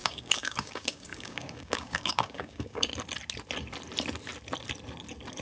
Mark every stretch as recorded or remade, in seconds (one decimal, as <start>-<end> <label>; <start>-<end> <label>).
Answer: 0.0-2.9 remade; 2.9-5.4 recorded